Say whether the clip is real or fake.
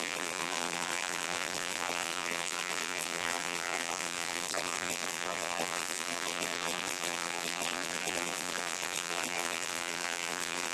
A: fake